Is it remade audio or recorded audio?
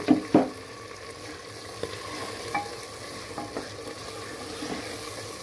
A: recorded